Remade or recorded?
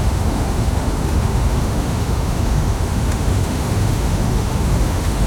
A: remade